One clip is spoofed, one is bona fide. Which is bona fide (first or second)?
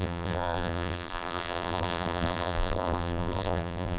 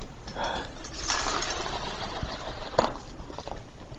second